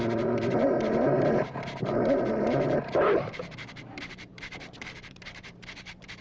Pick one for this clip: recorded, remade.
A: remade